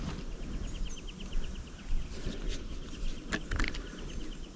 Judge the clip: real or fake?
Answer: real